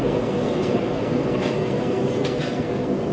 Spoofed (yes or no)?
yes